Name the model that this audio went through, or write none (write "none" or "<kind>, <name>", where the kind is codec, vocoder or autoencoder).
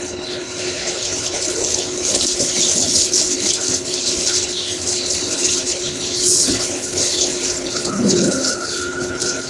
codec, HILCodec